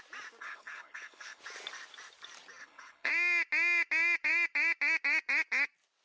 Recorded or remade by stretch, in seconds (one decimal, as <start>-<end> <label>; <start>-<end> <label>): 0.0-0.4 recorded; 0.4-1.4 remade; 1.4-2.6 recorded; 2.6-3.1 remade; 3.1-6.0 recorded